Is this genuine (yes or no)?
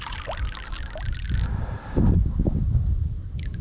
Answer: yes